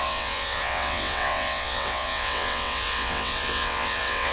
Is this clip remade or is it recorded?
remade